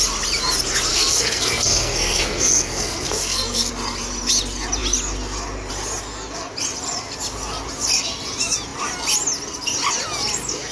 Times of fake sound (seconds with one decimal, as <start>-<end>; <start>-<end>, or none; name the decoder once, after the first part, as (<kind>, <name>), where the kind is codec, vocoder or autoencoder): 0.9-3.7 (codec, SNAC)